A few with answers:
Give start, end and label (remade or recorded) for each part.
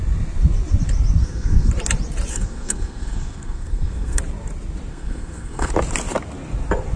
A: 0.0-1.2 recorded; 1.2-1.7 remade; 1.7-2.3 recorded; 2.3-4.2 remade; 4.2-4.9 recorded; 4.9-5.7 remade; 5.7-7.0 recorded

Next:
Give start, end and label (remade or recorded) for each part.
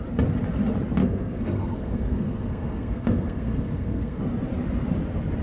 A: 0.0-1.0 recorded; 1.0-4.2 remade; 4.2-5.4 recorded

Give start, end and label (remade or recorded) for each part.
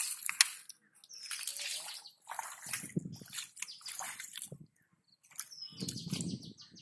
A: 0.0-6.8 recorded